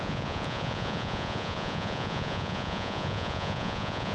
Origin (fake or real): fake